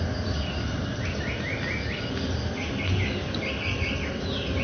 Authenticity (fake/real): real